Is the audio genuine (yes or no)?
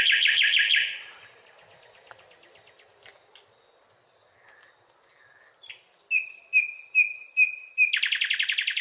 yes